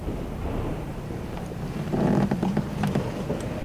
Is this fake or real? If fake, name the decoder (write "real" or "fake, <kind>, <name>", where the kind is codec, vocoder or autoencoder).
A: fake, vocoder, BigVGAN v2